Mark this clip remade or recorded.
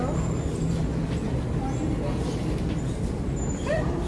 recorded